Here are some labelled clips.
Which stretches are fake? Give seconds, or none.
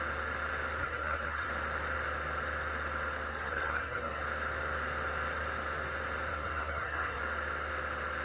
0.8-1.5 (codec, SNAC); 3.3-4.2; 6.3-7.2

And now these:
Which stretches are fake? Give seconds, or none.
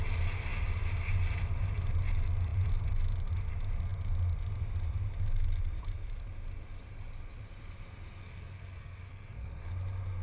8.2-9.7 (codec, SNAC)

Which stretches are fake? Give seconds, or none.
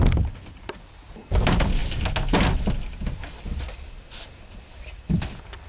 none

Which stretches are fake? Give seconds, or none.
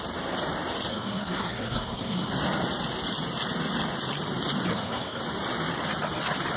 0.9-2.3 (codec, SNAC); 4.7-5.2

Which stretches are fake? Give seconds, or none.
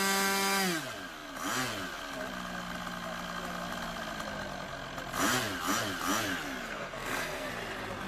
6.6-7.5 (codec, SNAC)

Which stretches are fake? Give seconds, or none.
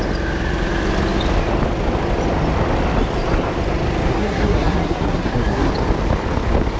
4.1-5.7 (codec, SNAC)